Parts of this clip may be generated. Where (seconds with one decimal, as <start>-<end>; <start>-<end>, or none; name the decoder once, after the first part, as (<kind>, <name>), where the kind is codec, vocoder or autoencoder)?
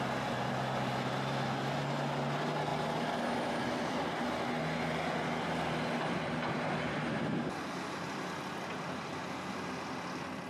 none